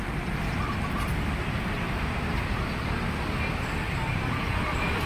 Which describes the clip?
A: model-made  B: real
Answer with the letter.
B